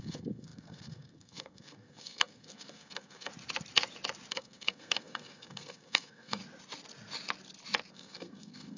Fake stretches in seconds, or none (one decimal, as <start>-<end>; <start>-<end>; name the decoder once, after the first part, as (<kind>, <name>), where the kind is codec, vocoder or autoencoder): 0.0-3.3 (codec, SNAC); 4.3-6.4; 7.9-8.8